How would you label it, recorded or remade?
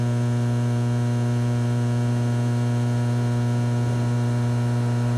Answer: remade